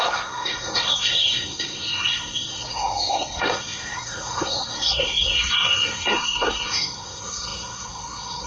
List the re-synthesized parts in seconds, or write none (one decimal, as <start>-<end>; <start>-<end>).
0.0-8.5